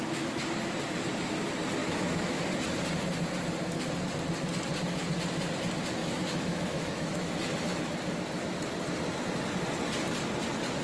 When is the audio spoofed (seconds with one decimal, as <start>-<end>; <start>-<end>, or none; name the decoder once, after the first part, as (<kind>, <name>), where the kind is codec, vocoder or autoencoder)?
1.8-2.4 (autoencoder, DAC-VAE); 6.0-7.3